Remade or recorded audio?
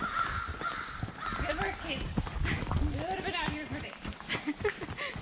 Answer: recorded